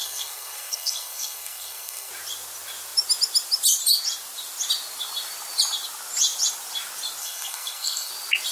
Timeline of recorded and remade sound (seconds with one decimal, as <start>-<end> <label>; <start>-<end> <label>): 0.0-2.1 remade; 2.1-7.2 recorded; 7.2-8.1 remade; 8.1-8.5 recorded